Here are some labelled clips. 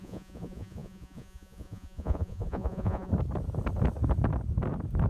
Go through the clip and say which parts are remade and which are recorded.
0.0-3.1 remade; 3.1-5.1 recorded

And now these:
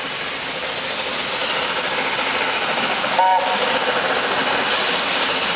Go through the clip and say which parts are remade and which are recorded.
0.0-5.6 recorded

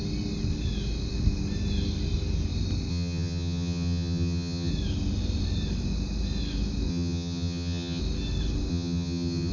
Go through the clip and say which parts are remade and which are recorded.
0.0-2.9 recorded; 2.9-4.7 remade; 4.7-6.9 recorded; 6.9-8.0 remade; 8.0-8.7 recorded; 8.7-9.5 remade

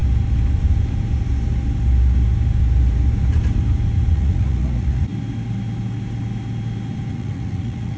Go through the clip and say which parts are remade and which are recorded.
0.0-4.1 recorded; 4.1-5.1 remade; 5.1-7.1 recorded; 7.1-8.0 remade